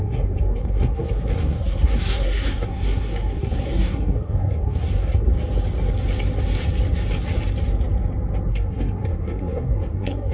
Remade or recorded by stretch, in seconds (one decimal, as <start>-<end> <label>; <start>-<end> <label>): 0.0-5.3 remade; 5.3-8.5 recorded; 8.5-10.3 remade